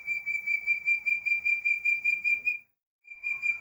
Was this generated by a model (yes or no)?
yes